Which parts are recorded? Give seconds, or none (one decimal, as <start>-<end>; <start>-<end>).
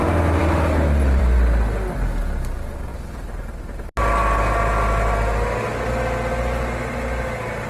0.0-7.7